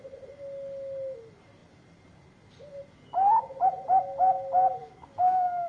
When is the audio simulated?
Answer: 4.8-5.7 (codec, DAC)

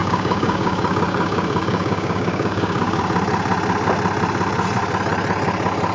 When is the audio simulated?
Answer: 0.0-3.0 (codec, DAC)

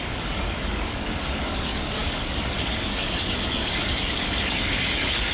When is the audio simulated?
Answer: 0.0-5.3 (codec, DAC)

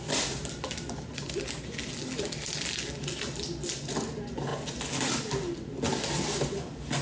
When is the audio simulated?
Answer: none

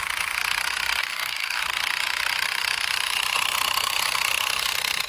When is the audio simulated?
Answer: 1.0-1.6 (codec, DAC)

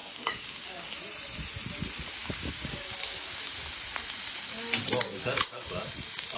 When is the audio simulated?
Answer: 0.0-1.0 (codec, DAC); 2.2-3.4

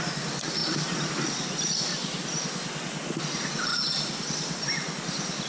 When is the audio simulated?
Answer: none